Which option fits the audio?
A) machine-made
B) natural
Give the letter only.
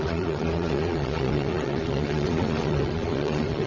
A